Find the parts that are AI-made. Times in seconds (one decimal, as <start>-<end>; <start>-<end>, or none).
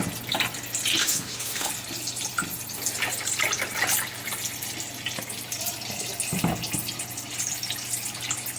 1.0-1.7